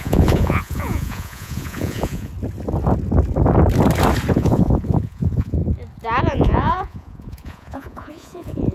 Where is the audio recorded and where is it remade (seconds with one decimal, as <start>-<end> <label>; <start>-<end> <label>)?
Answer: 0.0-2.3 remade; 2.3-4.3 recorded; 4.3-5.6 remade; 5.6-6.2 recorded; 6.2-8.7 remade